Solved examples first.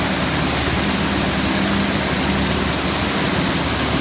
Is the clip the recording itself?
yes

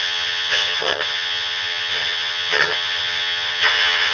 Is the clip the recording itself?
no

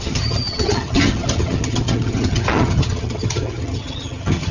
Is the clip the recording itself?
no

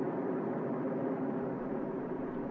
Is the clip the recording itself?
yes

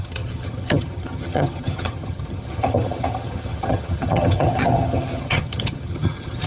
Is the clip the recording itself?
no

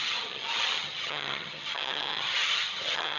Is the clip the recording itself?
no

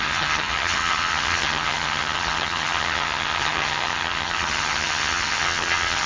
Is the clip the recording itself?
no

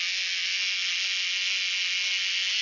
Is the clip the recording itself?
yes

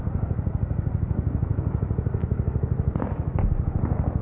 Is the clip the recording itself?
yes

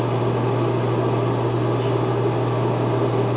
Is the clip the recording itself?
yes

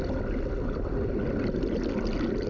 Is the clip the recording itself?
yes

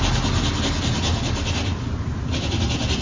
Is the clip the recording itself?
yes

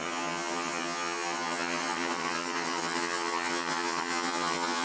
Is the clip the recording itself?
no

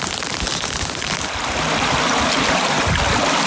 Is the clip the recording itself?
yes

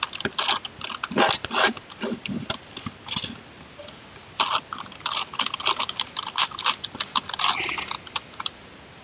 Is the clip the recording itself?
yes